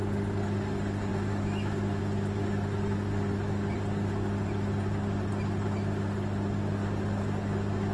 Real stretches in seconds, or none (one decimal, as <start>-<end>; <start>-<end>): 0.0-1.1; 2.0-7.9